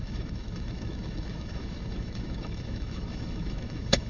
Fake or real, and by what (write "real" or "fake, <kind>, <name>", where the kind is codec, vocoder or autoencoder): fake, autoencoder, DAC-VAE